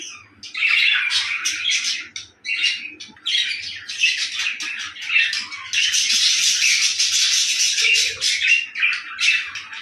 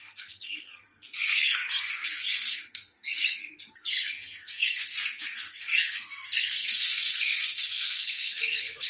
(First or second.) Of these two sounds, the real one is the first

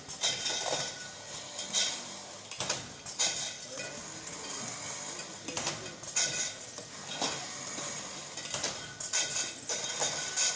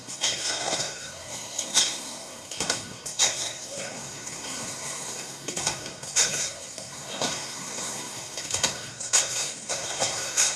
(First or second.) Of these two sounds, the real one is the first